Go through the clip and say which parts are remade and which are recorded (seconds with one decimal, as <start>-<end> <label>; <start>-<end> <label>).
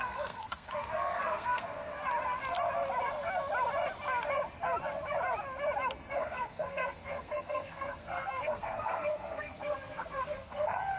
0.0-2.0 remade; 2.0-6.1 recorded; 6.1-11.0 remade